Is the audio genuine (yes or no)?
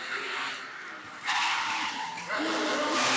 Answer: yes